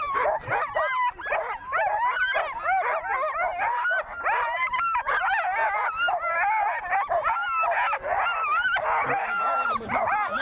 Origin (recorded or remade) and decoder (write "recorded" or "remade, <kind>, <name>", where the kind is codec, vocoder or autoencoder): recorded